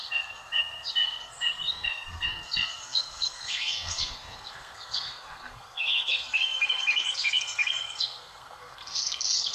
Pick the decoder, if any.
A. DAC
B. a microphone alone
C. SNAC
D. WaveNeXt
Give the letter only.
C